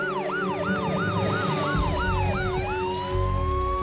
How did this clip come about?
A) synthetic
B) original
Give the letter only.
B